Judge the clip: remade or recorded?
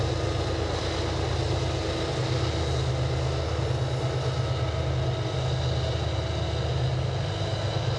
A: recorded